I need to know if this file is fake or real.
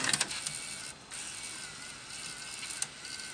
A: real